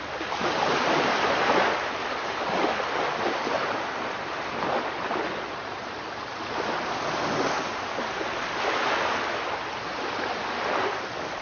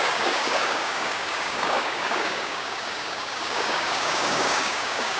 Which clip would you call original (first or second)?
first